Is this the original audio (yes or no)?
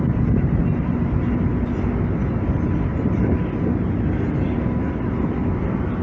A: yes